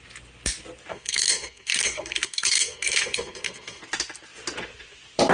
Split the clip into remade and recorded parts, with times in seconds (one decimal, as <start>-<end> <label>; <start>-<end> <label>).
0.0-0.9 recorded; 0.9-3.8 remade; 3.8-5.3 recorded